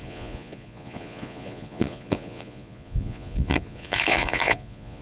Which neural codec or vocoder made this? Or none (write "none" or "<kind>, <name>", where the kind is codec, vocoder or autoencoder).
vocoder, Vocos